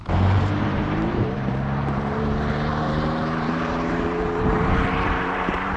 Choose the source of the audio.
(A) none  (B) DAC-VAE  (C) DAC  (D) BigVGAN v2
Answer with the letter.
D